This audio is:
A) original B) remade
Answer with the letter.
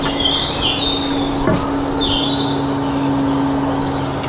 A